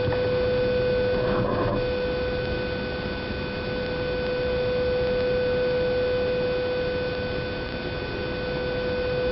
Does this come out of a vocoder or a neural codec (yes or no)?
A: no